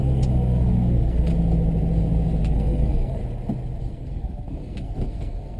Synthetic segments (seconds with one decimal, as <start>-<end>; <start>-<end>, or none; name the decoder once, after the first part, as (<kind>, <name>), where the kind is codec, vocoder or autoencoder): 0.0-1.3 (codec, SNAC); 2.4-3.2; 3.8-5.6